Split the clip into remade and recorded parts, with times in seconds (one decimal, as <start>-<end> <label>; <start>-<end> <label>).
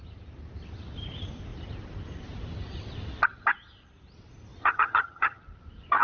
0.0-4.6 recorded; 4.6-5.4 remade; 5.4-6.0 recorded